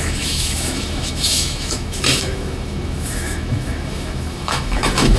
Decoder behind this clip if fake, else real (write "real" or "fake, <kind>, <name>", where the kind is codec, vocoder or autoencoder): fake, autoencoder, DAC-VAE